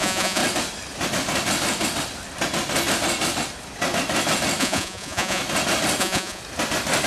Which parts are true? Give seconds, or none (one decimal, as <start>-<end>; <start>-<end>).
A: 0.4-4.6; 5.4-6.0; 6.4-7.1